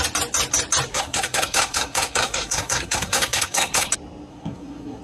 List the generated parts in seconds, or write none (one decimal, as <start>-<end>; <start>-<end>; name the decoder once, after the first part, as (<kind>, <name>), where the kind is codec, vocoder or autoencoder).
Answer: 0.9-3.9 (codec, SNAC); 4.3-5.0